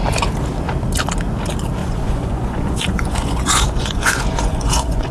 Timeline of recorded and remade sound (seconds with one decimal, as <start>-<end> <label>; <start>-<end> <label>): 0.0-1.8 recorded; 1.8-5.1 remade